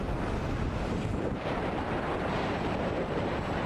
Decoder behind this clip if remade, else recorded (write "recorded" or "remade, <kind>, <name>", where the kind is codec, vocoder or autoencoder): remade, vocoder, BigVGAN v2